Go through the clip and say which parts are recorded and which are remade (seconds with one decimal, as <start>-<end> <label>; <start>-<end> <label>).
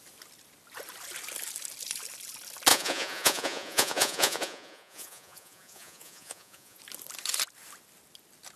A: 0.0-2.7 recorded; 2.7-6.8 remade; 6.8-8.6 recorded